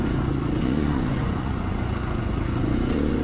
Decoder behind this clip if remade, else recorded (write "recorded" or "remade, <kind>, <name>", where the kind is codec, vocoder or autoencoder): remade, vocoder, Vocos